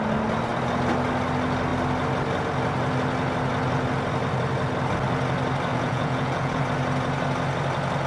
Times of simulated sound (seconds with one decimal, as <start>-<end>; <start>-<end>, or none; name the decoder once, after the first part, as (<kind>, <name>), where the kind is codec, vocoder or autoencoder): 5.7-6.6 (vocoder, Vocos)